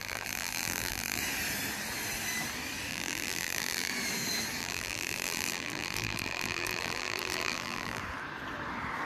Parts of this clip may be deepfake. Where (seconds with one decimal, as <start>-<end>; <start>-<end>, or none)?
0.0-1.2; 2.9-3.9; 4.6-8.0